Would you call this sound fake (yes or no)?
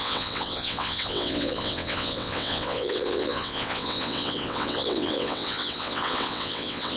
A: yes